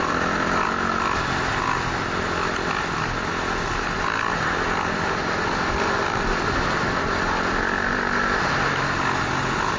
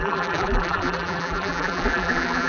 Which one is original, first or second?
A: first